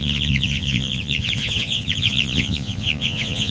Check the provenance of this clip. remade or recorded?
remade